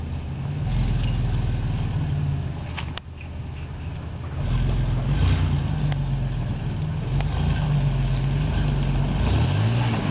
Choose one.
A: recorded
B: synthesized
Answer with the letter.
A